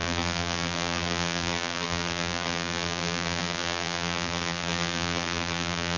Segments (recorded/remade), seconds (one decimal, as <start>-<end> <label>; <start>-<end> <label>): 0.0-6.0 remade